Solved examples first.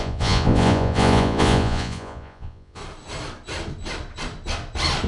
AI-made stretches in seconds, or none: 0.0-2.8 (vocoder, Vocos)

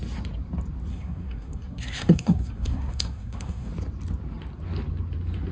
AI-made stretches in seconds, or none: 0.9-3.7 (codec, SNAC)

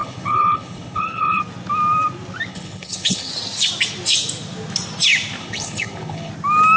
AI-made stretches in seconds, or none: 0.0-1.4 (codec, HILCodec); 2.5-3.3; 5.4-6.3